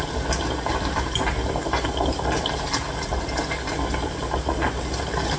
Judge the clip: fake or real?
real